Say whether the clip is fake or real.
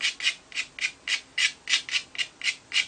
real